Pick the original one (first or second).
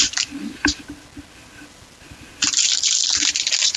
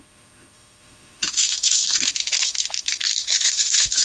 first